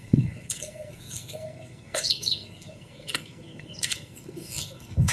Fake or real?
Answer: fake